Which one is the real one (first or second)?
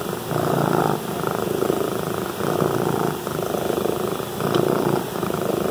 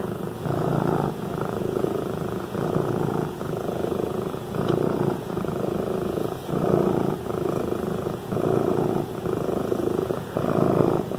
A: first